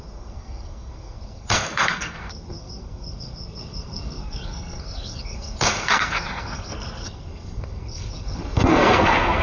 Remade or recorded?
remade